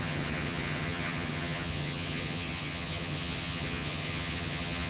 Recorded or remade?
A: remade